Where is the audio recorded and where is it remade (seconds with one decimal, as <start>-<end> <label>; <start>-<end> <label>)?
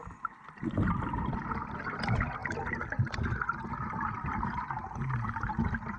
0.0-6.0 recorded